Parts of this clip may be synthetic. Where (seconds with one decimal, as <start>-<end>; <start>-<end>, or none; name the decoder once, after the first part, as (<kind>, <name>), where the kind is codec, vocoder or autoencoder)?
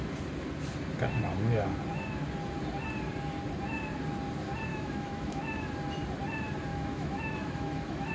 4.7-5.7 (autoencoder, DAC-VAE); 6.7-8.1